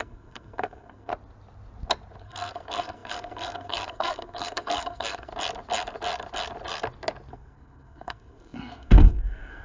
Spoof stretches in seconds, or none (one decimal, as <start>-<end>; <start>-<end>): 0.0-1.1; 2.2-5.3; 7.3-9.6